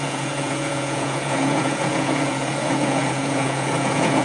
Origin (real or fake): fake